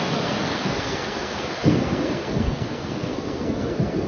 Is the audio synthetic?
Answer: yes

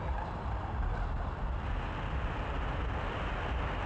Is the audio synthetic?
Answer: no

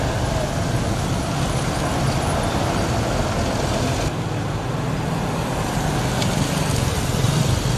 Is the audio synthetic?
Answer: no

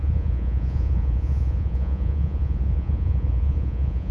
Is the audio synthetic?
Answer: yes